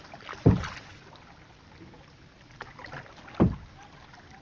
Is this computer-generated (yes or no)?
no